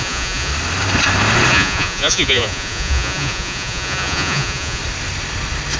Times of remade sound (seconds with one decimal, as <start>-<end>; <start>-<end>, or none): 0.0-0.5; 1.5-4.8